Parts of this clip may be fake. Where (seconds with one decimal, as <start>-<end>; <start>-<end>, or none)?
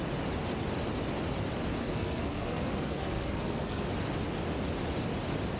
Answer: 1.8-3.9